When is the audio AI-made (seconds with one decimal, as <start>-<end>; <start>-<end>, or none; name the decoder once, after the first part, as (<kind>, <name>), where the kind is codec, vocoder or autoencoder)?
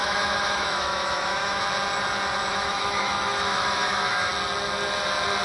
0.0-1.6 (autoencoder, DAC-VAE); 2.5-4.3